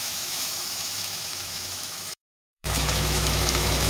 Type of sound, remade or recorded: remade